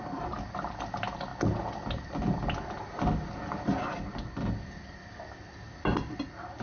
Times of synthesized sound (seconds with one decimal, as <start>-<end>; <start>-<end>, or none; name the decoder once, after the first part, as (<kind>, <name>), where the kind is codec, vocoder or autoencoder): none